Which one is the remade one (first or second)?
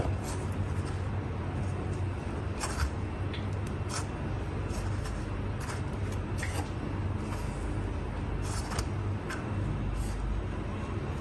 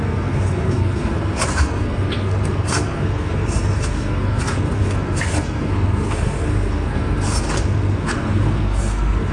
second